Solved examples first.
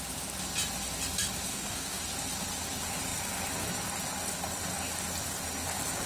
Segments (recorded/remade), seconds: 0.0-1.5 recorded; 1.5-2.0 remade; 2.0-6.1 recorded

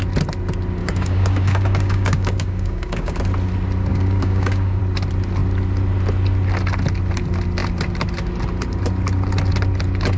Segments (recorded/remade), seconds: 0.0-0.8 recorded; 0.8-3.2 remade; 3.2-3.9 recorded; 3.9-4.8 remade; 4.8-10.2 recorded

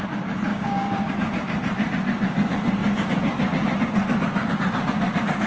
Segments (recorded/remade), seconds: 0.0-0.5 recorded; 0.5-1.1 remade; 1.1-5.5 recorded

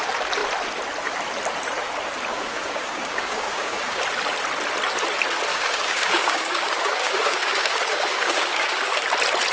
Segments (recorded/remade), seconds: 0.0-2.3 recorded; 2.3-4.0 remade; 4.0-5.5 recorded; 5.5-9.0 remade; 9.0-9.5 recorded